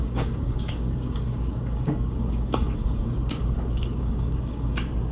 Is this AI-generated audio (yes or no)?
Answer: yes